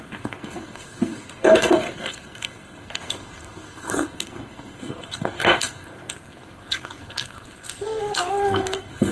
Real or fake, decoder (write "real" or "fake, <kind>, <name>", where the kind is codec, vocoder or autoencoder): fake, codec, SNAC